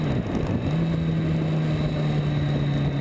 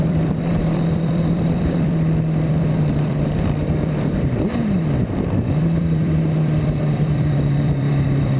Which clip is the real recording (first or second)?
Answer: first